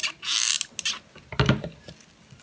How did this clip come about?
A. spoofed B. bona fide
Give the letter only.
B